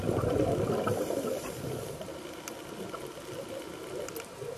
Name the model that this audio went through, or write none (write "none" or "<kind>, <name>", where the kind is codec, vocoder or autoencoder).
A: none